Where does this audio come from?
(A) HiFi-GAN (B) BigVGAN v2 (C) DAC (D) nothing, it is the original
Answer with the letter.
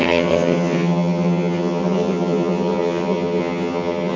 A